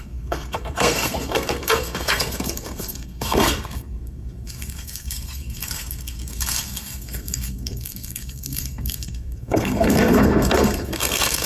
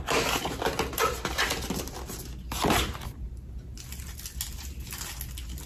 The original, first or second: second